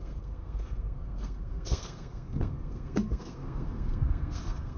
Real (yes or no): no